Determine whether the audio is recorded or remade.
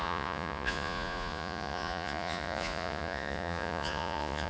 remade